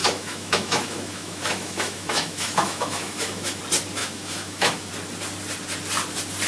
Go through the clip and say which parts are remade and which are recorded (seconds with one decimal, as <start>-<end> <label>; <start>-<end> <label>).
0.0-3.6 remade; 3.6-4.0 recorded; 4.0-4.9 remade; 4.9-6.5 recorded